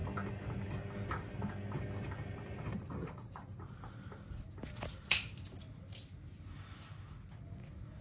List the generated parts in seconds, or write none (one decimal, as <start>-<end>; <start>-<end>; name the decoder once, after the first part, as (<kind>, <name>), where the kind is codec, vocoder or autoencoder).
2.7-4.1 (vocoder, BigVGAN v2)